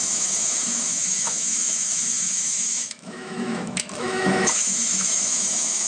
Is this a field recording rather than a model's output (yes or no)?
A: no